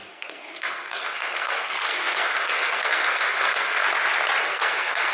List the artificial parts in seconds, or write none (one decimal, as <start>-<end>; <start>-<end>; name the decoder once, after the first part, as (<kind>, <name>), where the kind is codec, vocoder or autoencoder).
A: 0.0-3.8 (codec, SNAC); 4.4-5.1